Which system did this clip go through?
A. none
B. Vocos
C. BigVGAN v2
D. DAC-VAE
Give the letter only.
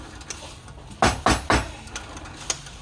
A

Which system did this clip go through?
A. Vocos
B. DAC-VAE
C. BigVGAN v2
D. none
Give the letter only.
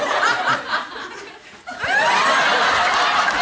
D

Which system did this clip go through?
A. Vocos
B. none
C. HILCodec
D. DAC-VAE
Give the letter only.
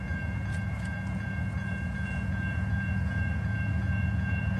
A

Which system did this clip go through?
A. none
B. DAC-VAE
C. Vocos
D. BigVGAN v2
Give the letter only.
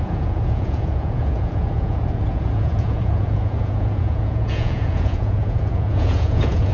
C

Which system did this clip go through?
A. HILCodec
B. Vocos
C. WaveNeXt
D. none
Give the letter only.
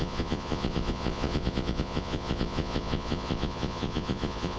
B